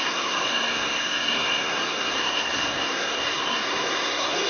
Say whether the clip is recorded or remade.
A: remade